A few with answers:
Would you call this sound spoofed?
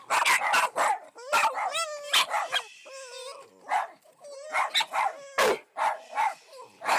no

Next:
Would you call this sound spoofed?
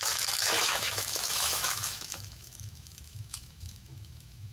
yes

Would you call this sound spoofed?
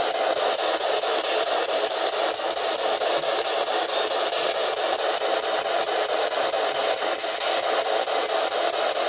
no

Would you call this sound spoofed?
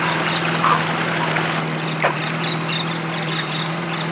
no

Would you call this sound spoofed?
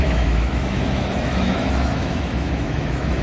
yes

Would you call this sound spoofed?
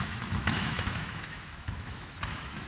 yes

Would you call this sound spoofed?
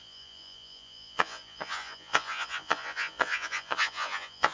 yes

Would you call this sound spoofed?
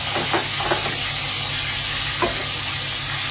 no